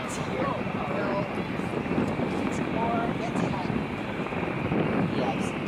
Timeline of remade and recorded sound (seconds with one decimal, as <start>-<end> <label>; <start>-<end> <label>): 0.0-1.7 recorded; 1.7-4.6 remade; 4.6-5.7 recorded